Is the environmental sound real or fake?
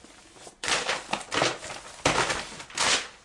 real